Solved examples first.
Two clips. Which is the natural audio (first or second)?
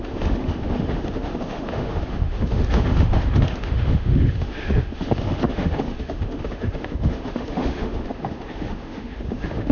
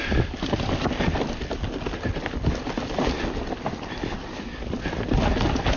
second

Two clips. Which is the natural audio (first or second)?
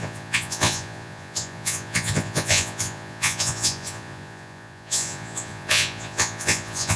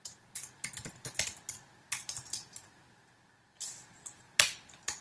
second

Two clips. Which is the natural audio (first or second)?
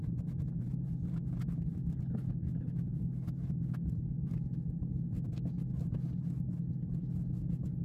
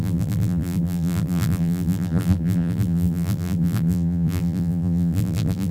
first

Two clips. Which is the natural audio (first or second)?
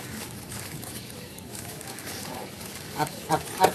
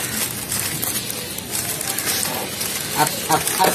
second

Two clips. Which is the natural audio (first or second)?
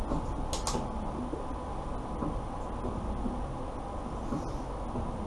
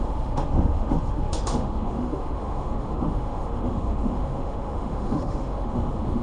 first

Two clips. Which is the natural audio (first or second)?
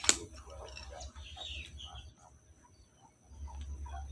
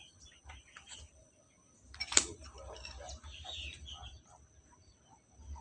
first